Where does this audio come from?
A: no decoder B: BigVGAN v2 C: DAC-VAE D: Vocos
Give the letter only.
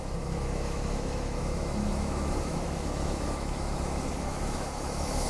C